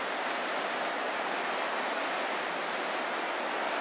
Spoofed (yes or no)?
no